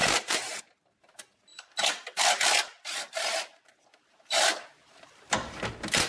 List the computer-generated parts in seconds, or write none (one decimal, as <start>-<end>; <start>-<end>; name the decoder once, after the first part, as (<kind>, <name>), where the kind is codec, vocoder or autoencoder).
0.0-0.6 (vocoder, BigVGAN v2)